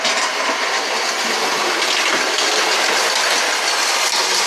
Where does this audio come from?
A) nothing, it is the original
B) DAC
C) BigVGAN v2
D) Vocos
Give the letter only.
A